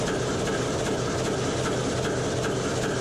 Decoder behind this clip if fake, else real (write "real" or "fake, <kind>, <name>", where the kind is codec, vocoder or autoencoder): real